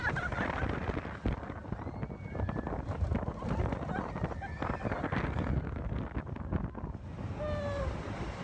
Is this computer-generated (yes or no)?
no